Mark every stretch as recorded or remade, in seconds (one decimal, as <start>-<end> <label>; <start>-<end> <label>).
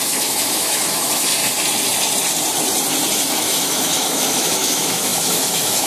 0.0-1.3 remade; 1.3-3.3 recorded; 3.3-5.9 remade